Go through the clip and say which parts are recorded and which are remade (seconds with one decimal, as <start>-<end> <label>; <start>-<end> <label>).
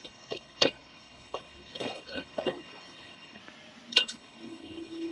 0.0-3.4 remade; 3.4-3.9 recorded; 3.9-5.1 remade